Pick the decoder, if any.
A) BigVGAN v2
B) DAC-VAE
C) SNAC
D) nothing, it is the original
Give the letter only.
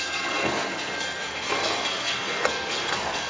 C